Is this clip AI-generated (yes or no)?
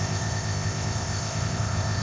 yes